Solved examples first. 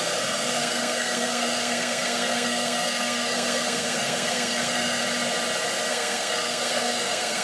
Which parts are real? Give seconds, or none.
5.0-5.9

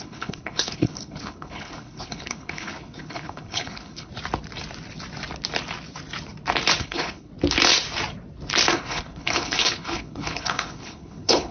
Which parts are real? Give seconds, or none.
4.1-6.8; 7.3-8.7

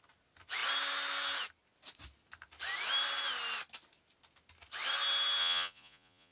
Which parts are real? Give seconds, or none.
0.0-5.4

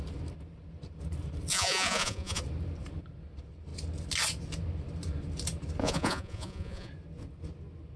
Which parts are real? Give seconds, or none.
0.0-1.5; 2.4-5.8; 6.9-8.0

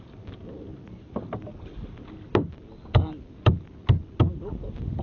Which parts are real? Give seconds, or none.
0.0-5.0

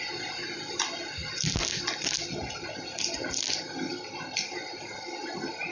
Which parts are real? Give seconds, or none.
0.0-5.7

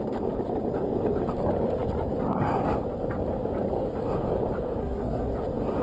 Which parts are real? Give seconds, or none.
0.0-4.8; 5.3-5.8

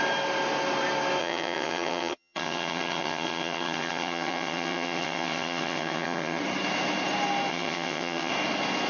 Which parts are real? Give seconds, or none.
0.0-1.2; 6.4-7.5; 8.3-8.9